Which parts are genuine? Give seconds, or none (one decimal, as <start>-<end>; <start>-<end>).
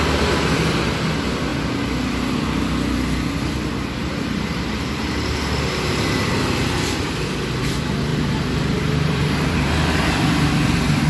0.0-4.0; 5.9-8.1; 10.1-11.1